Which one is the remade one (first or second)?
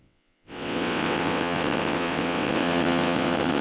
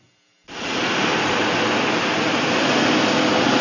first